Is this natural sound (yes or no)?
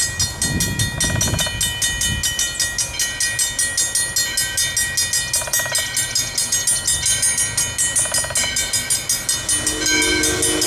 yes